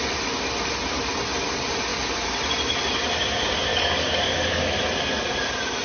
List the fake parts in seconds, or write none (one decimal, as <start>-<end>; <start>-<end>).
3.7-4.8